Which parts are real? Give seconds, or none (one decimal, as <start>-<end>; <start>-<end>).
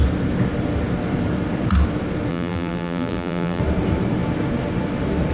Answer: 0.0-2.3; 3.6-5.3